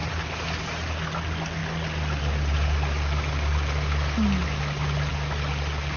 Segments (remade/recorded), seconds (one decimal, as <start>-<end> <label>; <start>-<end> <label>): 0.0-6.0 recorded

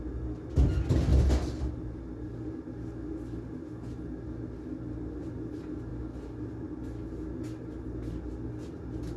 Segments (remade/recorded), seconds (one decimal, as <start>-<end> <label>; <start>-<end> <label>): 0.0-9.2 recorded

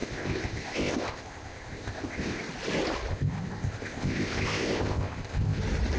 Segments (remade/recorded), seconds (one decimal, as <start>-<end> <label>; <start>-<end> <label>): 0.0-2.4 remade; 2.4-3.1 recorded; 3.1-5.6 remade; 5.6-6.0 recorded